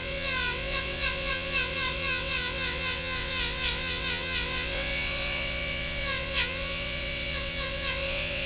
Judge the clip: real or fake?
fake